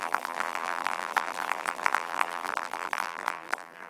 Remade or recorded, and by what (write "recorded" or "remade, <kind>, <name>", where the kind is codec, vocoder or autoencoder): remade, vocoder, BigVGAN v2